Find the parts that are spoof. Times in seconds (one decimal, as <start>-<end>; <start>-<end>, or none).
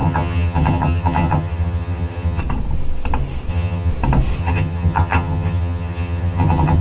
0.0-2.4; 3.5-3.9; 4.4-6.8